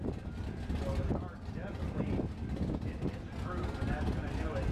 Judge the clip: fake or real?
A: real